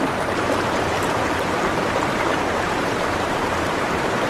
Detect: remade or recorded remade